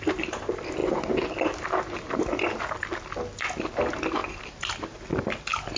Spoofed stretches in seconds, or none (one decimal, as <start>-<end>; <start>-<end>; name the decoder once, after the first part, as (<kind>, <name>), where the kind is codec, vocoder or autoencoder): none